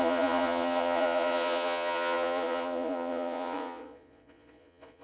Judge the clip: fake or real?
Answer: fake